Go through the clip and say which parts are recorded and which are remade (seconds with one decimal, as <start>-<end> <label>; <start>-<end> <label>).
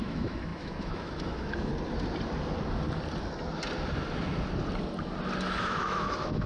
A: 0.0-1.7 remade; 1.7-5.6 recorded; 5.6-6.5 remade